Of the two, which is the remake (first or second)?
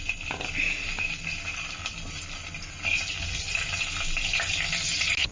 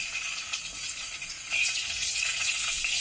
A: second